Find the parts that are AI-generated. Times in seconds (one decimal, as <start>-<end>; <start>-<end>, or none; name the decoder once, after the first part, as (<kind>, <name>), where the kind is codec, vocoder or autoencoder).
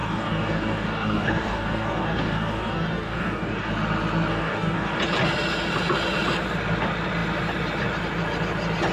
0.0-3.7 (codec, DAC); 4.3-5.0